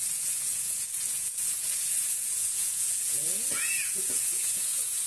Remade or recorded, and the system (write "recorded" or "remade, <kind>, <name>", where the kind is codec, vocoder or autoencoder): remade, vocoder, Vocos